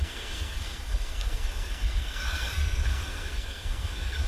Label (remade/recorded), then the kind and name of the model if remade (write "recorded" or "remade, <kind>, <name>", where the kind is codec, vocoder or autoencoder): remade, codec, SNAC